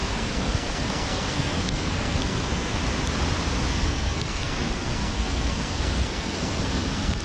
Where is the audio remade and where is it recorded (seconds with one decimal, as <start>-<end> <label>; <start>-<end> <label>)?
0.0-2.8 remade; 2.8-3.7 recorded; 3.7-7.2 remade